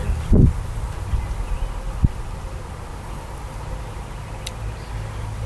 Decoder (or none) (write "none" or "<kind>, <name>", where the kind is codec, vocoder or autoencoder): none